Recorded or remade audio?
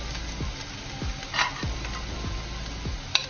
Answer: recorded